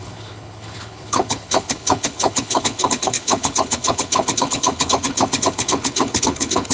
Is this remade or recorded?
remade